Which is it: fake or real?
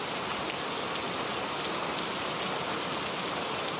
real